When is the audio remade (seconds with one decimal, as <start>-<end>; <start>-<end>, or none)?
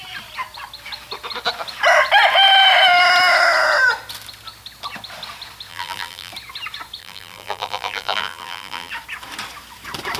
5.7-6.3; 7.0-8.9